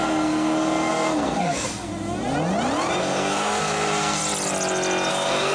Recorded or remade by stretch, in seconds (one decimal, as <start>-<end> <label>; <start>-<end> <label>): 0.0-1.9 remade; 1.9-3.0 recorded; 3.0-4.2 remade; 4.2-5.1 recorded; 5.1-5.5 remade